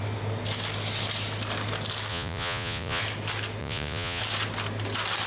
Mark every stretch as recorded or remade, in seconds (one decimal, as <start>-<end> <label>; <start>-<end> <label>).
0.0-2.1 recorded; 2.1-3.0 remade; 3.0-3.6 recorded; 3.6-4.2 remade; 4.2-5.3 recorded